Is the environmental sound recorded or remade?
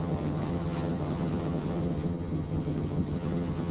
remade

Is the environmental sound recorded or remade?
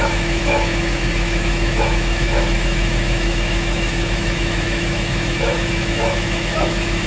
remade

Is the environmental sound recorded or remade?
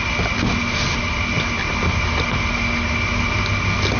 recorded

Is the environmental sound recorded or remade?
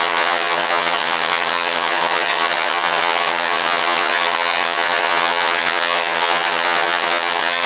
remade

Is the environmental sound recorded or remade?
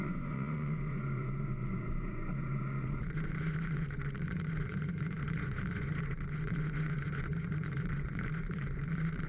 remade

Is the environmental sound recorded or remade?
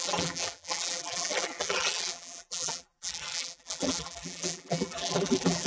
remade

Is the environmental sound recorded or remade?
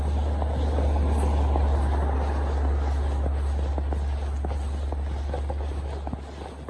recorded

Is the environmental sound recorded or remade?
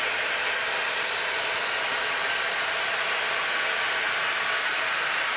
recorded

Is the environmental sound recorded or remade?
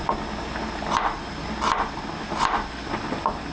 recorded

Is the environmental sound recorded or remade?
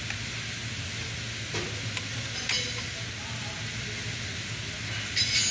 recorded